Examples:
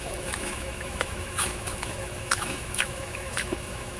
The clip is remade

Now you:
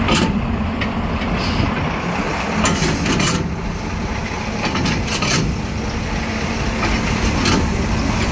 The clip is recorded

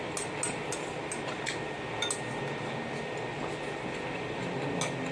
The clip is recorded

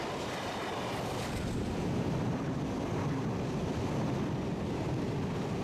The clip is recorded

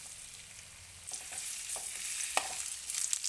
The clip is recorded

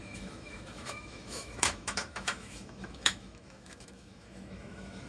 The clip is remade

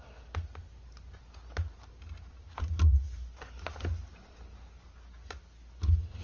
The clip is recorded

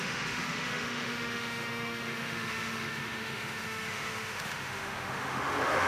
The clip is remade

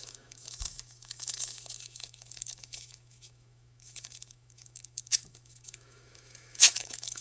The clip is remade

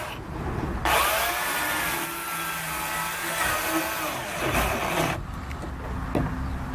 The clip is recorded